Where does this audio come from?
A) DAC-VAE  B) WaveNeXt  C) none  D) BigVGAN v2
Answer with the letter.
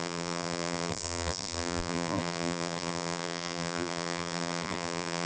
D